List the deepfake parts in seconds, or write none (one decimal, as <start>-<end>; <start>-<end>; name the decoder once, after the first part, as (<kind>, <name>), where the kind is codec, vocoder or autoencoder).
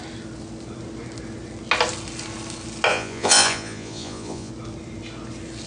2.9-4.5 (vocoder, Vocos)